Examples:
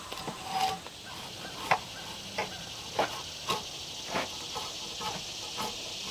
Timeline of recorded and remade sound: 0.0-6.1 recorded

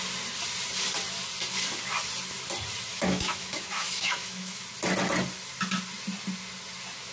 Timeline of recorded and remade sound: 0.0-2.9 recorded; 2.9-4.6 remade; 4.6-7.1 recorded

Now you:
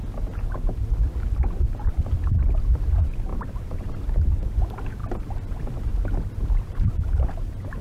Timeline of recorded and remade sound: 0.0-3.3 recorded; 3.3-4.6 remade; 4.6-7.8 recorded